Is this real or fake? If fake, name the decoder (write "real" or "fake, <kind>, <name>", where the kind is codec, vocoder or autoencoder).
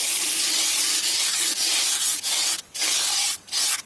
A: real